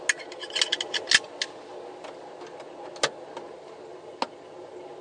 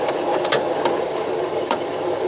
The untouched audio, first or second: first